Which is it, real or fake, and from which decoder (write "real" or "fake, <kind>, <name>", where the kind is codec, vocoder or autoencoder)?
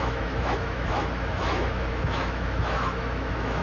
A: fake, autoencoder, DAC-VAE